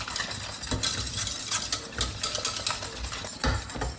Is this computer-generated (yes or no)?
no